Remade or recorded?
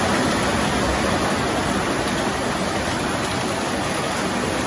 recorded